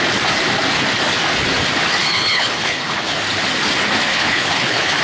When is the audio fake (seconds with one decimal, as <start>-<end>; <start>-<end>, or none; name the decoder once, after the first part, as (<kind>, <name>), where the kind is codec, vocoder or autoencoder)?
2.0-3.2 (codec, HILCodec); 4.1-5.0